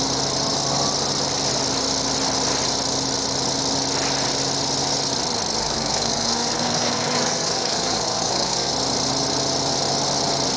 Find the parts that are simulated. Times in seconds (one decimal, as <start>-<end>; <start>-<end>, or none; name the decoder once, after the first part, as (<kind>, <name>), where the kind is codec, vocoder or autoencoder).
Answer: 5.6-8.7 (codec, SNAC)